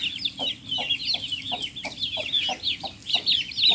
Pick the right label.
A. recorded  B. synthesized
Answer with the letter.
A